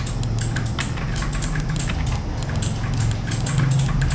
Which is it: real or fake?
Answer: real